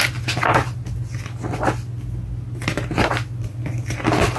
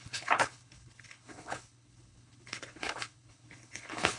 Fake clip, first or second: second